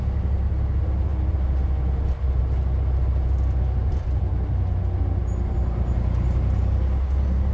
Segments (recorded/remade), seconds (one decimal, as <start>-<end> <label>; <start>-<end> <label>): 0.0-7.5 recorded